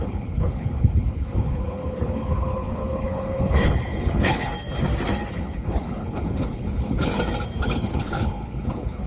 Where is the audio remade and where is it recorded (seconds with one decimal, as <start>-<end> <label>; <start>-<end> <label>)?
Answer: 0.0-4.5 remade; 4.5-5.3 recorded; 5.3-7.1 remade; 7.1-7.6 recorded; 7.6-9.1 remade